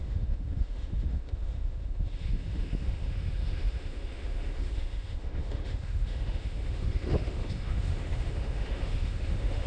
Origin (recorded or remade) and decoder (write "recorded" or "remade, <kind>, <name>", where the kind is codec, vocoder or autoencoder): remade, autoencoder, DAC-VAE